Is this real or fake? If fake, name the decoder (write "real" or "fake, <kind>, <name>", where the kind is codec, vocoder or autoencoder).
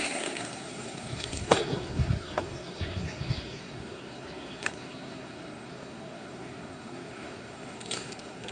fake, codec, SNAC